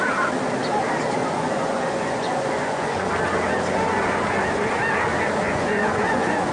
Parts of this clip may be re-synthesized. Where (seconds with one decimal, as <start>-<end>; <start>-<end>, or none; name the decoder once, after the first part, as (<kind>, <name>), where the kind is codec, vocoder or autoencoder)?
1.2-3.1 (vocoder, Vocos); 5.4-6.5